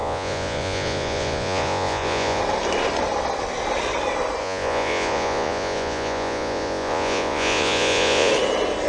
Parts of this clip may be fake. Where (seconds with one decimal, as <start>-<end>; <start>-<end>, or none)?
0.0-2.4; 4.4-8.3